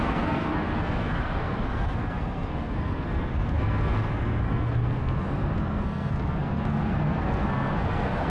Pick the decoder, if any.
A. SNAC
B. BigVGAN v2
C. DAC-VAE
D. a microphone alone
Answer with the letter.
A